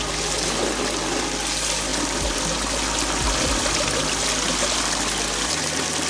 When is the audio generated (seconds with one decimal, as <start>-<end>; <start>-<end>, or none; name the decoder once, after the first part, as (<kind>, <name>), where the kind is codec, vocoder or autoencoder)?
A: none